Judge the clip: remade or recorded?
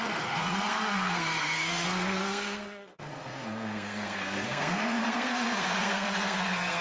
remade